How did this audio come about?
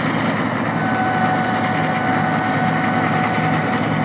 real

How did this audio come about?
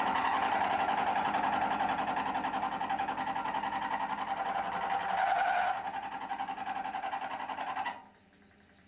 real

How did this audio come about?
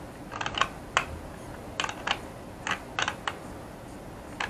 real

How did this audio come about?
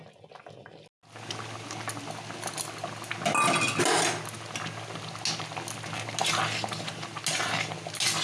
real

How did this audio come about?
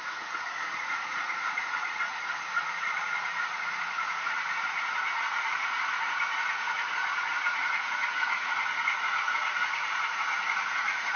fake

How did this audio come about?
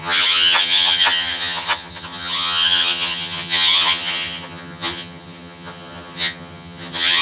fake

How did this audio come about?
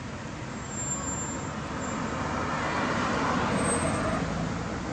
real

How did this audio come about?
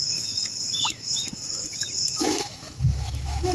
fake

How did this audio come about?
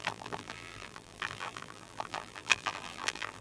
fake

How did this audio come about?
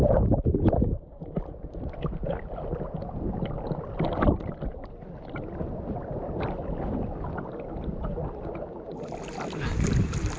real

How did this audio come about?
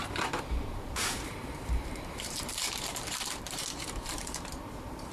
fake